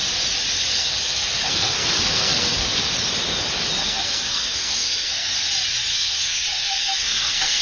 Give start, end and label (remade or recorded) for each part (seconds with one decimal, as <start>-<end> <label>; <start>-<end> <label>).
0.0-0.7 recorded; 0.7-2.8 remade; 2.8-3.8 recorded; 3.8-5.3 remade; 5.3-5.9 recorded; 5.9-7.6 remade